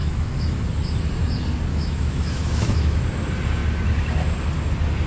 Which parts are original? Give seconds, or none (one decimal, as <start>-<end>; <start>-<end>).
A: 0.6-1.7; 3.0-5.1